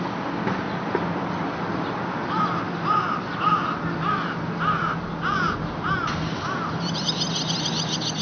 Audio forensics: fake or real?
real